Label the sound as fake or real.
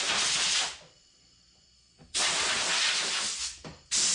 real